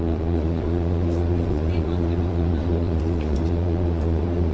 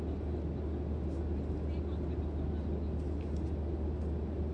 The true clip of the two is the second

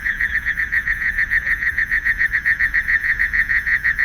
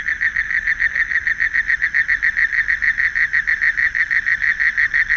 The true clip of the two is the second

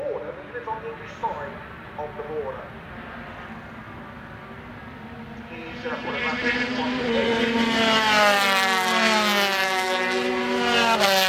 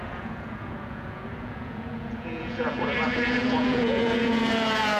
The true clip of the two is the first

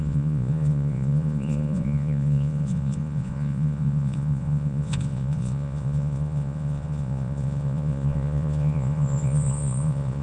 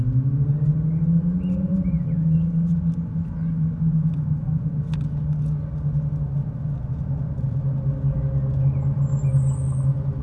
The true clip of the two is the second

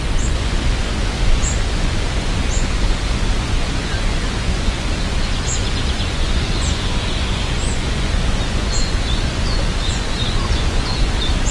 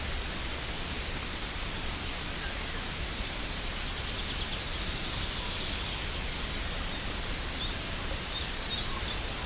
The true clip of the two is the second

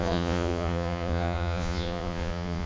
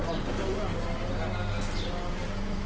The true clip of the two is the second